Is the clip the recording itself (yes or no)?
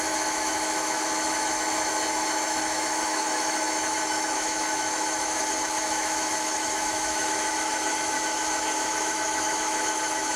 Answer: no